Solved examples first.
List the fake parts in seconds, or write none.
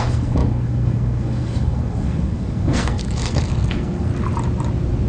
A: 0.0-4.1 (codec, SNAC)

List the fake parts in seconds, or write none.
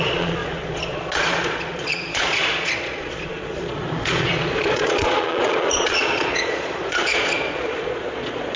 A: 0.0-8.6 (vocoder, Vocos)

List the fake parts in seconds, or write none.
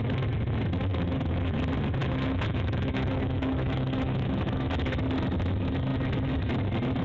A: 0.9-1.6 (autoencoder, DAC-VAE); 2.0-5.0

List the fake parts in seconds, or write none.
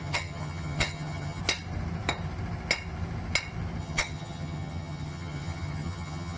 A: 0.0-1.4 (vocoder, HiFi-GAN); 3.8-6.4